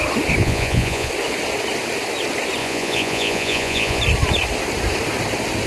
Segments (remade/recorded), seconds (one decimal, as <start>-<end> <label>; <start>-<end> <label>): 0.0-0.4 recorded; 0.4-1.1 remade; 1.1-2.6 recorded; 2.6-4.0 remade; 4.0-5.7 recorded